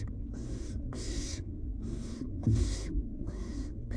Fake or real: fake